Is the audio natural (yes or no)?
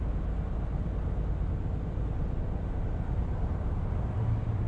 yes